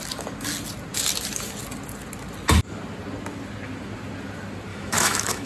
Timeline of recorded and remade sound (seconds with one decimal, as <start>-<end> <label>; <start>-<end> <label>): 0.0-4.7 recorded; 4.7-5.5 remade